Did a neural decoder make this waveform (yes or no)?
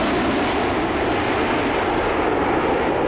no